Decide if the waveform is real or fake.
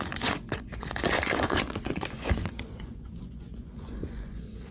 fake